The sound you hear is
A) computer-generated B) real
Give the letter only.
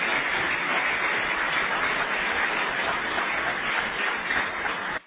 B